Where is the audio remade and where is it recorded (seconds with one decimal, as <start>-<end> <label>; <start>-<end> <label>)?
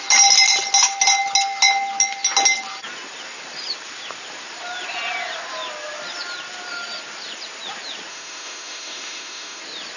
0.0-8.1 recorded; 8.1-9.6 remade; 9.6-10.0 recorded